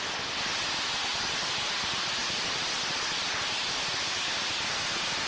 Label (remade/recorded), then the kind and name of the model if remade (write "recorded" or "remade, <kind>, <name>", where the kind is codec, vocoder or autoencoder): recorded